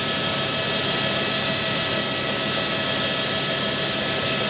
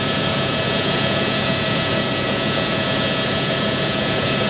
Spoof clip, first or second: second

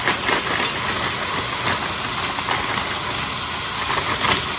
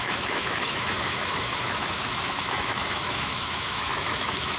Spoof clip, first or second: second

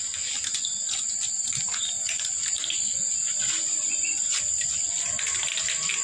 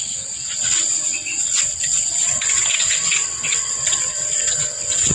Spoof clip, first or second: second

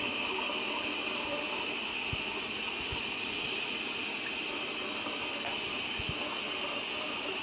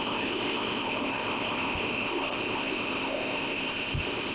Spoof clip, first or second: second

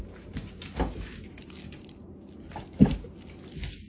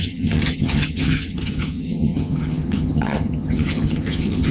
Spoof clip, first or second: second